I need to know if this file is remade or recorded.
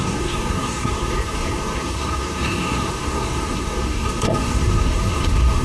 remade